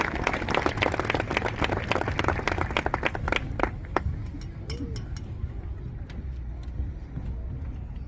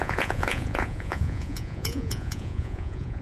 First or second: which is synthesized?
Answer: second